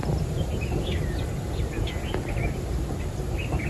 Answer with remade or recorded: recorded